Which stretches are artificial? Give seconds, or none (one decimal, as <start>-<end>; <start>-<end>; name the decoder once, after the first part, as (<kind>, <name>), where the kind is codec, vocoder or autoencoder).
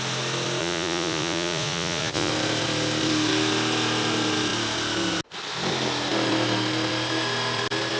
0.6-2.3 (vocoder, Vocos)